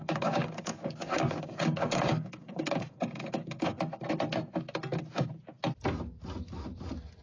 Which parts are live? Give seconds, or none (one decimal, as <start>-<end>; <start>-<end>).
3.8-7.2